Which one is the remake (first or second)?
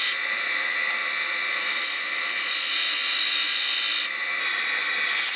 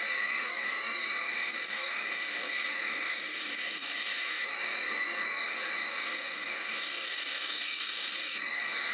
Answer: second